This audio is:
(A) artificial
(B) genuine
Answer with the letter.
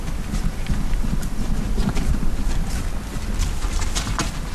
B